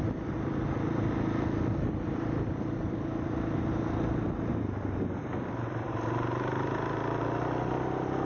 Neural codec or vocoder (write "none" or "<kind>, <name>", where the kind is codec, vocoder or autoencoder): none